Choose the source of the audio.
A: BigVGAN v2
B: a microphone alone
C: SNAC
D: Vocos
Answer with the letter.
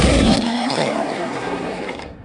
C